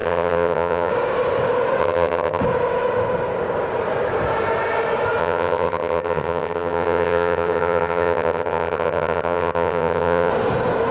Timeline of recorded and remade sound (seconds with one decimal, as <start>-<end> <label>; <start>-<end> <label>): 0.0-0.9 remade; 0.9-1.8 recorded; 1.8-2.4 remade; 2.4-5.2 recorded; 5.2-10.3 remade; 10.3-10.9 recorded